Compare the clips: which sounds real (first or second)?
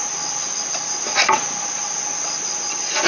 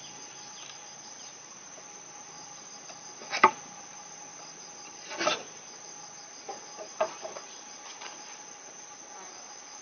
first